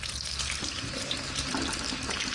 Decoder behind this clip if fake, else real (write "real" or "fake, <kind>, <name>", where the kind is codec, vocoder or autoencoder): real